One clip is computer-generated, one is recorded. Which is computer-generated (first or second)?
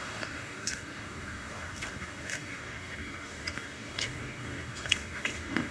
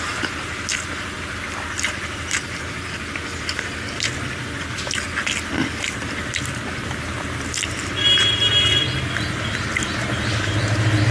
first